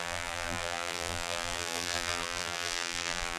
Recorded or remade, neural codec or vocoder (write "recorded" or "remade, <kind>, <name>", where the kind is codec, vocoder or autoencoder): remade, vocoder, BigVGAN v2